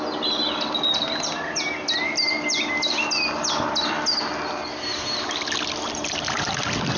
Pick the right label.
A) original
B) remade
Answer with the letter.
A